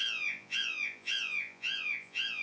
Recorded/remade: remade